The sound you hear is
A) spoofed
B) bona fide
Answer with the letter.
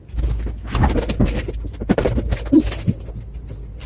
B